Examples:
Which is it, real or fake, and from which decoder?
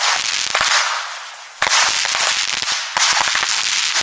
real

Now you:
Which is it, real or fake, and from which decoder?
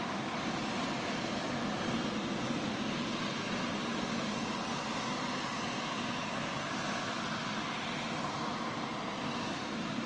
real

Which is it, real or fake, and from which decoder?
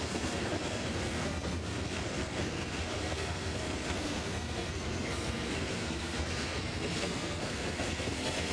fake, codec, SNAC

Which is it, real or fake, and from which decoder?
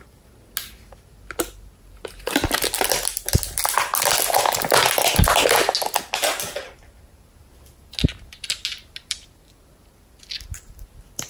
real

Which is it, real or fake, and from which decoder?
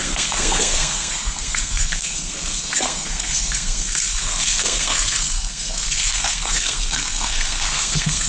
fake, codec, SNAC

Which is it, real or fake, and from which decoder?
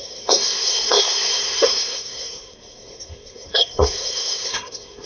fake, codec, SNAC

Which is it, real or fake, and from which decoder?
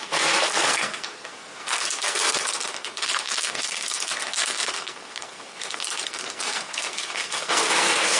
fake, codec, SNAC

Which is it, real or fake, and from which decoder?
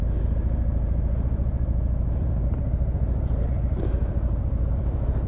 real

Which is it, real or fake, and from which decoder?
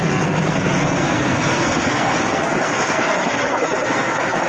fake, codec, SNAC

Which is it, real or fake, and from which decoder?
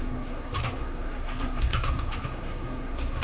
fake, codec, SNAC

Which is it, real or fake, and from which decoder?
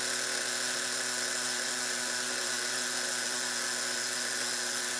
real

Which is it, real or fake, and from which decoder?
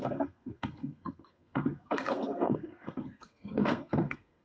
fake, codec, SNAC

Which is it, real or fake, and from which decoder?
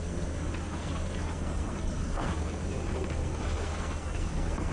fake, codec, SNAC